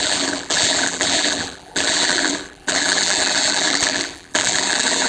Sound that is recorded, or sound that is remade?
remade